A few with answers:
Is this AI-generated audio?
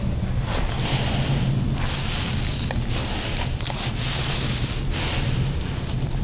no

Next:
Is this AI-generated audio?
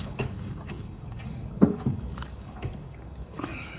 yes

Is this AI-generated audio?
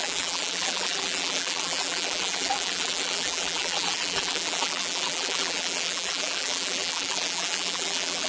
yes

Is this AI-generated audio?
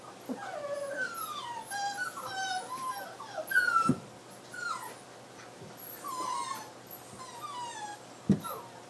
no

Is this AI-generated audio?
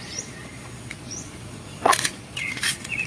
yes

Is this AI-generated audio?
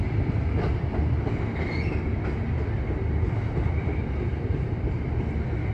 yes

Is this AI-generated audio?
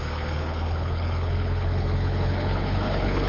yes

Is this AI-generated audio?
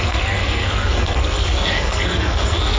yes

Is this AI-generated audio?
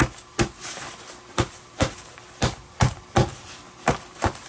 no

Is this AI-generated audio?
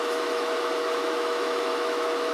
yes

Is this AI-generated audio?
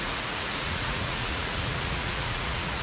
yes